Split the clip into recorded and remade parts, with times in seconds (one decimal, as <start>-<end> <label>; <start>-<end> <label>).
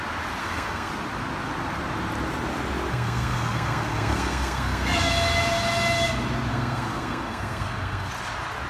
0.0-0.4 recorded; 0.4-0.9 remade; 0.9-2.9 recorded; 2.9-5.1 remade; 5.1-6.5 recorded; 6.5-8.1 remade; 8.1-8.7 recorded